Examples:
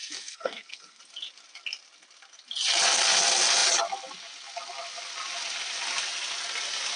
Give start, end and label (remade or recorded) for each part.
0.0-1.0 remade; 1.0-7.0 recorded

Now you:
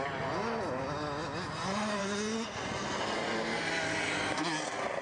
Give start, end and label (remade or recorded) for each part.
0.0-5.0 recorded

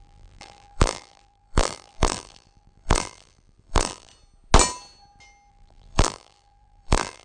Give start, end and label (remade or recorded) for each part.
0.0-4.1 remade; 4.1-5.5 recorded; 5.5-7.2 remade